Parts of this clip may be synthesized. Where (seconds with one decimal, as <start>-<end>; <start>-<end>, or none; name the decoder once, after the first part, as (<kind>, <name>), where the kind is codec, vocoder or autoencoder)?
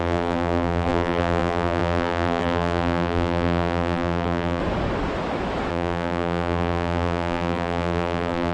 0.0-4.6 (vocoder, BigVGAN v2); 5.7-8.5